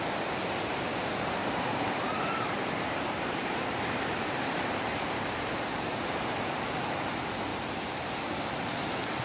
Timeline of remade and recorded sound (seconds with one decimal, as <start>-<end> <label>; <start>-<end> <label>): 0.0-1.4 recorded; 1.4-6.6 remade; 6.6-7.5 recorded; 7.5-8.3 remade; 8.3-9.2 recorded